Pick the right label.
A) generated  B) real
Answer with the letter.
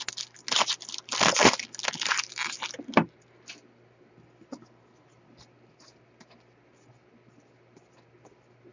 B